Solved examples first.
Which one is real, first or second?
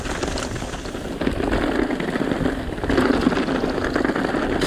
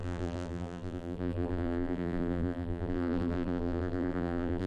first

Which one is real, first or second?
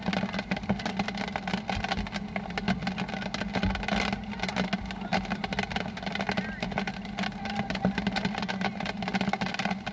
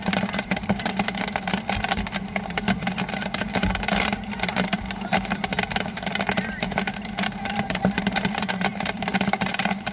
first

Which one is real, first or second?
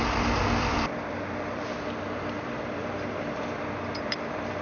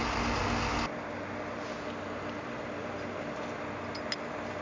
second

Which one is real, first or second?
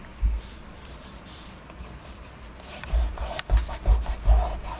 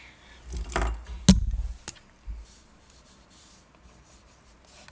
second